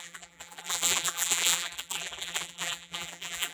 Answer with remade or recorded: remade